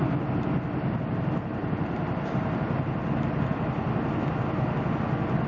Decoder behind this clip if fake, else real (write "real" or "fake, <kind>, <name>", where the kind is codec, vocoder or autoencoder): real